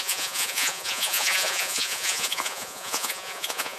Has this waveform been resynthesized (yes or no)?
yes